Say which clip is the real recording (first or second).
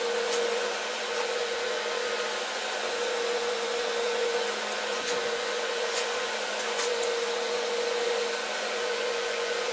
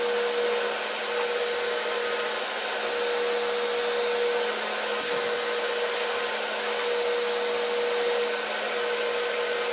second